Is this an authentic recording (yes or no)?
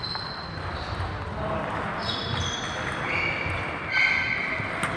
yes